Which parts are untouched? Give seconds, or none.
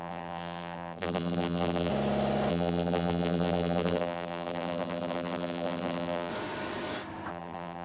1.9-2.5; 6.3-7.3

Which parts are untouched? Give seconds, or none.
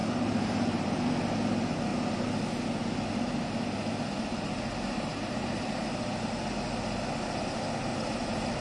1.1-5.1; 5.8-7.9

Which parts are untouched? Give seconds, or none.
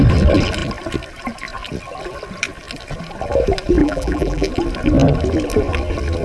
0.0-3.8; 4.5-6.2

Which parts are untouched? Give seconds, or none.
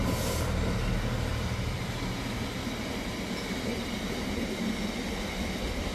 0.0-1.3; 1.8-3.7; 4.5-5.9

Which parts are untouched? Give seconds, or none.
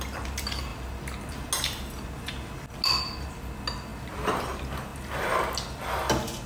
0.0-3.9; 4.5-6.5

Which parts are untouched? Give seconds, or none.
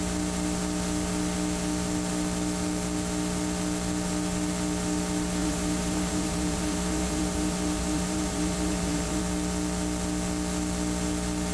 0.0-5.4; 9.2-11.5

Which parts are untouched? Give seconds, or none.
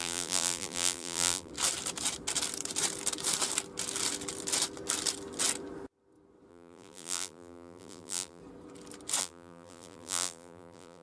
1.5-6.5; 8.4-9.2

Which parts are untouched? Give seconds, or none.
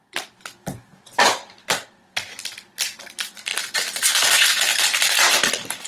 0.0-5.9